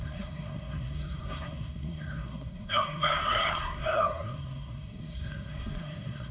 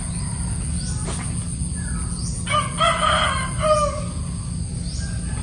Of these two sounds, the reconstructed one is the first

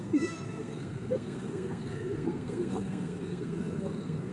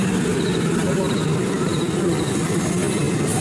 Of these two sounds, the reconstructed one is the first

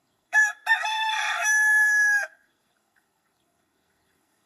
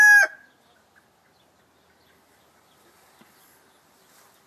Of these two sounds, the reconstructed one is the first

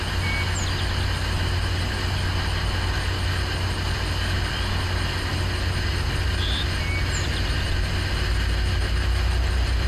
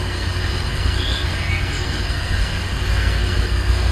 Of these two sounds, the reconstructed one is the second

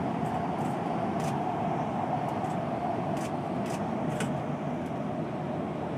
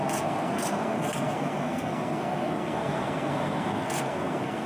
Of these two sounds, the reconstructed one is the second